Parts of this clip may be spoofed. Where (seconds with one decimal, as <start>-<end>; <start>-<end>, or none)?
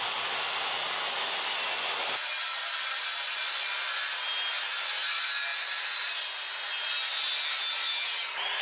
none